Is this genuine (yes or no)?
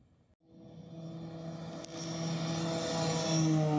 yes